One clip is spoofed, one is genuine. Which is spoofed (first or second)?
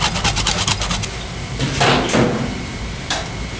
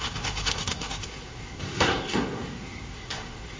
second